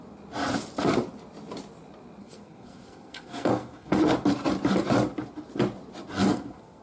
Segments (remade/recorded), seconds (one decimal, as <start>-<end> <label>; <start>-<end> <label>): 0.0-2.2 recorded; 2.2-4.0 remade; 4.0-6.3 recorded; 6.3-6.8 remade